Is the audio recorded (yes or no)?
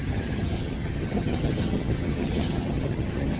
no